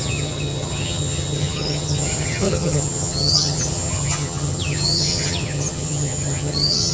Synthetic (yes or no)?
yes